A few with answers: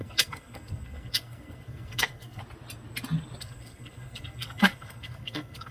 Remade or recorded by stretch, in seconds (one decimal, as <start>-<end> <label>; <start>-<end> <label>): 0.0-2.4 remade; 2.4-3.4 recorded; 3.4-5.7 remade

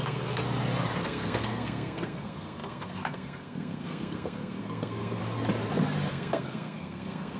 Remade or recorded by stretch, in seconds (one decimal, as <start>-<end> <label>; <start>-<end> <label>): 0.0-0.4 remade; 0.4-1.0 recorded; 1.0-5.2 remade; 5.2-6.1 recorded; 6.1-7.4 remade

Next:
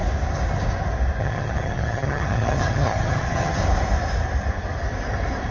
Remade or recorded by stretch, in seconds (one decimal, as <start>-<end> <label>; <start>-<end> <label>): 0.0-1.2 recorded; 1.2-3.6 remade; 3.6-5.5 recorded

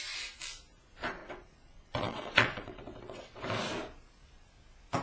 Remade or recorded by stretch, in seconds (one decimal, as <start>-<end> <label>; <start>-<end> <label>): 0.0-1.2 recorded; 1.2-3.4 remade; 3.4-5.0 recorded